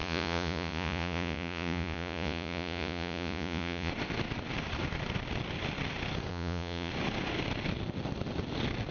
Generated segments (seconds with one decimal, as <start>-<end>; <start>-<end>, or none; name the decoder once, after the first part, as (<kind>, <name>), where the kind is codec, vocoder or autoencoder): 0.0-3.9 (vocoder, Vocos); 6.3-6.9